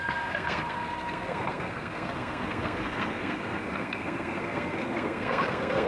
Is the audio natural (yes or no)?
no